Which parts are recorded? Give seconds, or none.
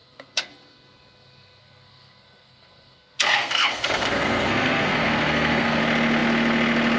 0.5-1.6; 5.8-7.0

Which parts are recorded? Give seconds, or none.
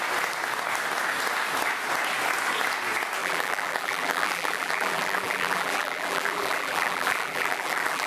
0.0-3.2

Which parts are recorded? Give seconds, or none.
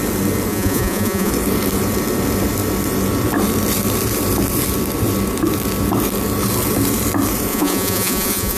0.0-0.5; 1.3-7.5